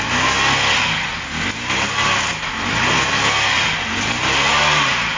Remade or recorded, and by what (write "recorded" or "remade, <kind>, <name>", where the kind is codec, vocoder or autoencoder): recorded